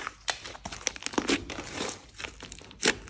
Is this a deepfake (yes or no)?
no